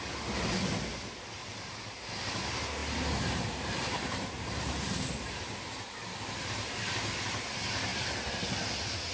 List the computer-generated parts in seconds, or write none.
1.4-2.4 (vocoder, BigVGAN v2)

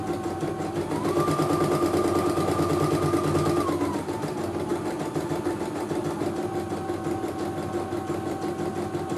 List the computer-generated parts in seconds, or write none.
none

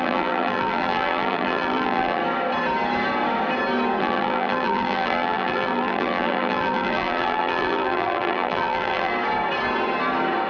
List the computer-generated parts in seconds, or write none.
0.0-2.2 (vocoder, BigVGAN v2); 4.0-9.1

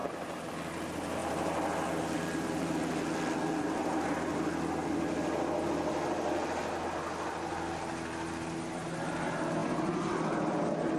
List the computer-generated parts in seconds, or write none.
0.0-0.5 (vocoder, BigVGAN v2)